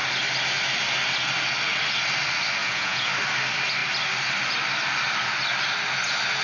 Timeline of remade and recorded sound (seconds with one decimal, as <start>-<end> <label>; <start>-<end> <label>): 0.0-2.6 recorded; 2.6-3.1 remade; 3.1-6.4 recorded